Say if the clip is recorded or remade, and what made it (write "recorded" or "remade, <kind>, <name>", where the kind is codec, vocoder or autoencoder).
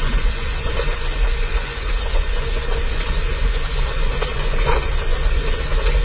remade, vocoder, Vocos